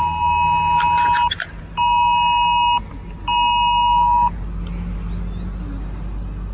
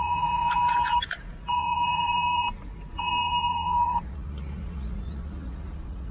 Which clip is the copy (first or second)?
second